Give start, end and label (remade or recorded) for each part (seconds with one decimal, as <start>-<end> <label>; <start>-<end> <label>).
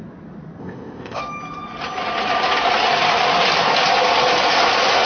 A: 0.0-0.6 recorded; 0.6-1.2 remade; 1.2-5.1 recorded